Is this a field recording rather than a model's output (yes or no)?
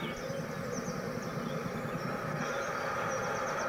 yes